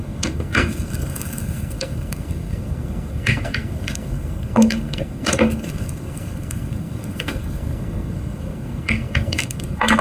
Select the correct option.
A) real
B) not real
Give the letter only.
B